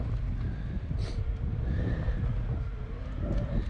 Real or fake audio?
real